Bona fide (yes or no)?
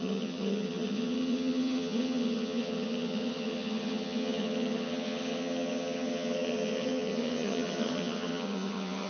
no